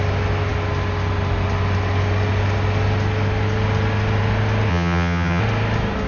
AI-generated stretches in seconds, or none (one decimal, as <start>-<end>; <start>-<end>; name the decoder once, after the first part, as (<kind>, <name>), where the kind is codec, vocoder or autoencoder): 4.7-5.4 (vocoder, HiFi-GAN)